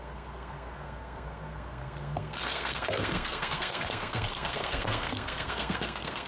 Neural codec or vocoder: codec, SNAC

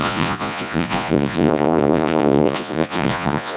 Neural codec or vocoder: vocoder, Vocos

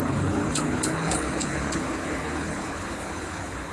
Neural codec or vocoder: codec, HILCodec